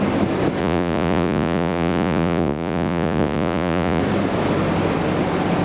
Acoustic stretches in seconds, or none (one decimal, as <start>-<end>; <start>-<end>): 0.0-0.6; 4.0-5.6